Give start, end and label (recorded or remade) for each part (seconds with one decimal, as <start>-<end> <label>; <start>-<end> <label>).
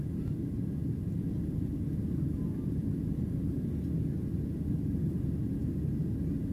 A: 0.0-6.5 recorded